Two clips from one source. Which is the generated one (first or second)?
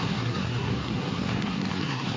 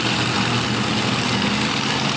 first